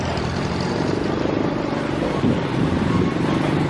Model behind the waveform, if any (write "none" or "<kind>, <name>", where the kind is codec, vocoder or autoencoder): vocoder, BigVGAN v2